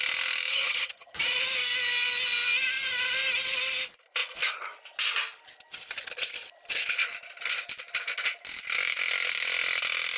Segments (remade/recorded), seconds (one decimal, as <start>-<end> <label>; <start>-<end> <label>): 0.0-0.5 recorded; 0.5-1.2 remade; 1.2-10.2 recorded